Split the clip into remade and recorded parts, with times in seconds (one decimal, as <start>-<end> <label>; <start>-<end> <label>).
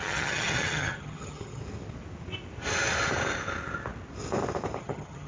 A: 0.0-1.6 remade; 1.6-4.8 recorded; 4.8-5.3 remade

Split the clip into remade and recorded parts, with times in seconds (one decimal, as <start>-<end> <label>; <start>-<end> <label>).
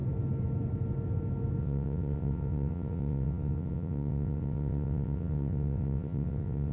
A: 0.0-1.6 recorded; 1.6-6.7 remade